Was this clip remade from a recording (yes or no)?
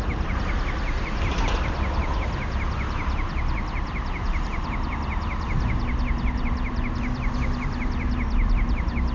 no